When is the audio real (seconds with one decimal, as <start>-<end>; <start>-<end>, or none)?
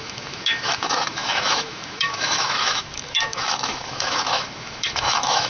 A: none